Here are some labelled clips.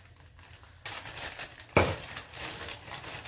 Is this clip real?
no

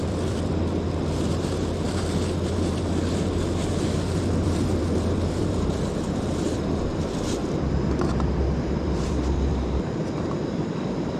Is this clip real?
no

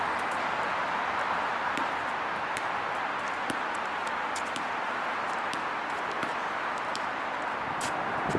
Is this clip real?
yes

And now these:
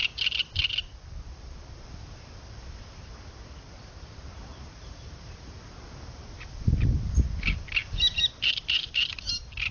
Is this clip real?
no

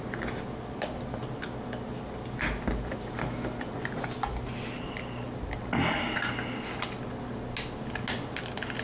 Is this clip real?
yes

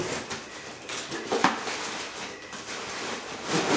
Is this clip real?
no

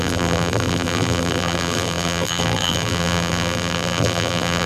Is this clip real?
no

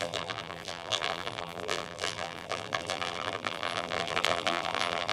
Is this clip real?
no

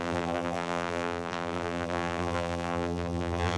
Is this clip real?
no